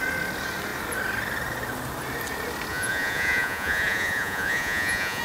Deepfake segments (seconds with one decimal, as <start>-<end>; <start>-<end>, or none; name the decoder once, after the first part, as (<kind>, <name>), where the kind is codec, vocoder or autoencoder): 2.7-5.2 (vocoder, Vocos)